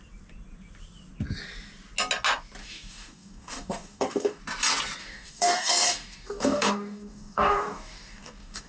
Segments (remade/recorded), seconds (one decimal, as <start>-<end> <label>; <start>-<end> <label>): 0.0-2.6 recorded; 2.6-4.4 remade; 4.4-5.0 recorded; 5.0-8.7 remade